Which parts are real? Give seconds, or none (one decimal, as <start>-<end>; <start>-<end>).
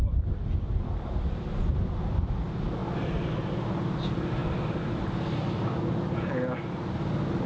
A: 0.0-4.4; 4.9-7.5